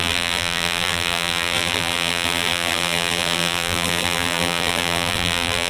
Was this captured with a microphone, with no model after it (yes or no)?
no